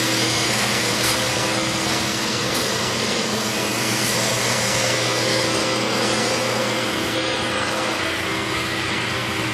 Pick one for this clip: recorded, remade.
remade